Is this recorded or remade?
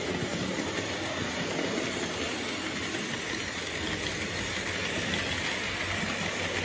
recorded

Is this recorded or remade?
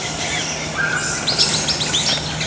recorded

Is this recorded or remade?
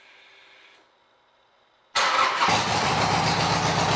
recorded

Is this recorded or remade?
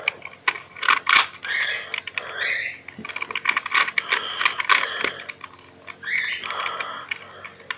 recorded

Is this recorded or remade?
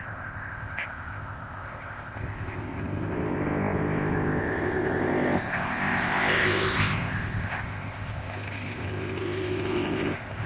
remade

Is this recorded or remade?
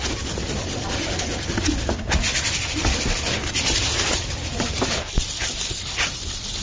recorded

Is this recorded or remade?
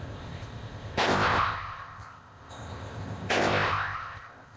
remade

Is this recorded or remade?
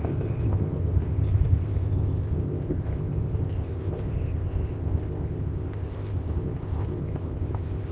remade